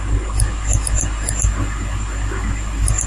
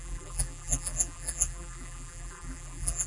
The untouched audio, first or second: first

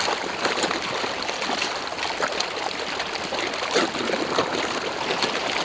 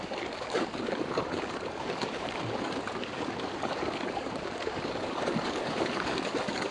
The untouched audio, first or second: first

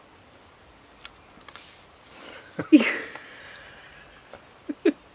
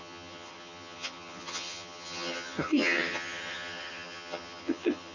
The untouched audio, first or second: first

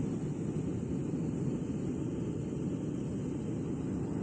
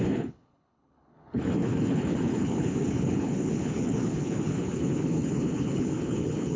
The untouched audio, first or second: first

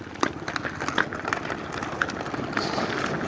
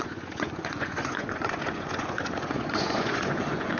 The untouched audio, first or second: first